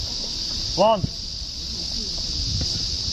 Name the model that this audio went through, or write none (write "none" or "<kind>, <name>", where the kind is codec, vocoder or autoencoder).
none